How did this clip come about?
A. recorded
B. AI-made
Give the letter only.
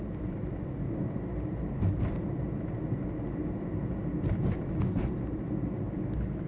A